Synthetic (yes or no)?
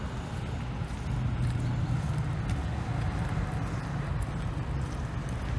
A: no